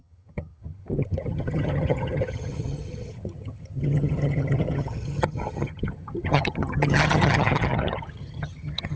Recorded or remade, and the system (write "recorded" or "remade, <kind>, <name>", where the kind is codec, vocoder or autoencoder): remade, vocoder, HiFi-GAN